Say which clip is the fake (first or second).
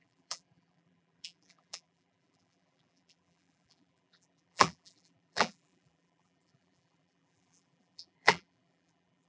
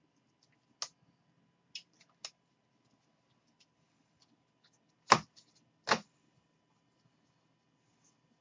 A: first